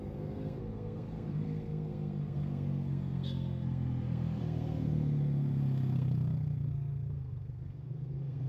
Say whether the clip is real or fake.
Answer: fake